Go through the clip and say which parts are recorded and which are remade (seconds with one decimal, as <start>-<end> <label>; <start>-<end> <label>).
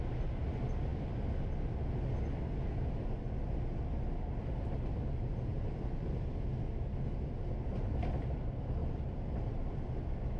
0.0-10.4 recorded